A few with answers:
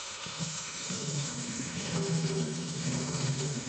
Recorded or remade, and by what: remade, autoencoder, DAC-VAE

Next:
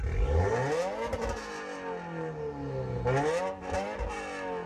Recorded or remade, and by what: recorded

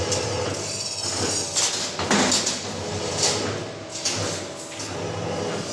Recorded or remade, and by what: recorded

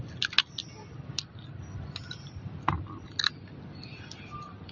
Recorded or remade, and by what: recorded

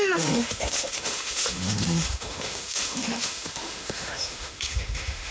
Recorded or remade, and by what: remade, autoencoder, DAC-VAE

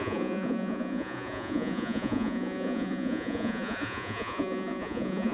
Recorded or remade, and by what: remade, vocoder, Vocos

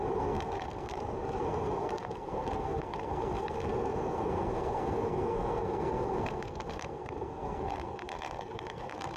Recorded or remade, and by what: remade, codec, SNAC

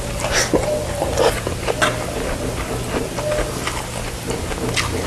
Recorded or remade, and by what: recorded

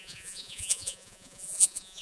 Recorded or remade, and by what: remade, vocoder, Vocos